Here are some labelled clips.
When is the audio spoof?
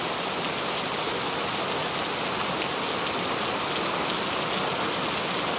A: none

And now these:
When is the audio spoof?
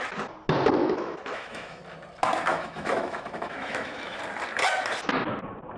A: 0.8-1.8 (autoencoder, DAC-VAE); 2.5-4.2